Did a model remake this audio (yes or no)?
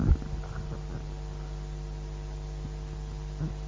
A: no